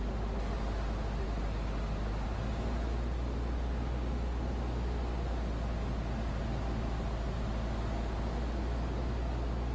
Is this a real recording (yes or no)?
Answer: yes